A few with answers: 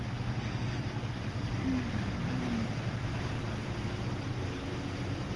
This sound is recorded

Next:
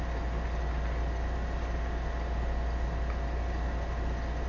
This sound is recorded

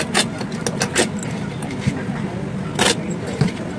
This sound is recorded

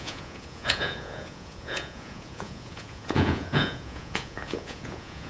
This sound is remade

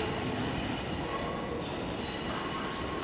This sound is recorded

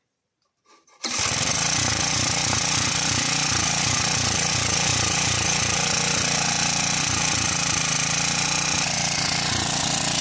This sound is recorded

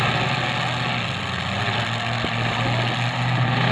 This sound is recorded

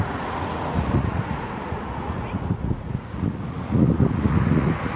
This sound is remade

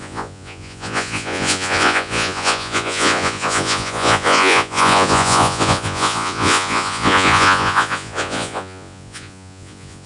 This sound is remade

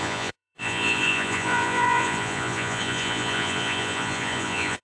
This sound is remade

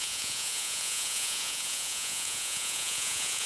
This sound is remade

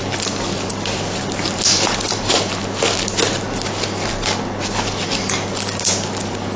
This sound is recorded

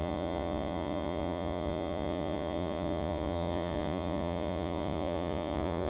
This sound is remade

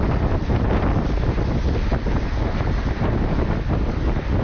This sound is recorded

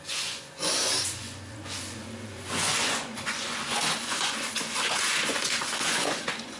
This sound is remade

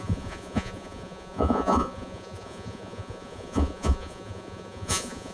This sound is remade